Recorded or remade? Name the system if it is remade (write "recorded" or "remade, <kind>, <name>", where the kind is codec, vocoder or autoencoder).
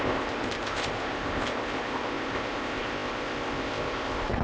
remade, codec, ZipCodec